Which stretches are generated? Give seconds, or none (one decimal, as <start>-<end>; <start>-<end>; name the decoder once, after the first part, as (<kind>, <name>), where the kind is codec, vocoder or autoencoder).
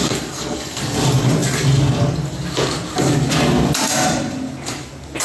0.0-0.8 (codec, SNAC)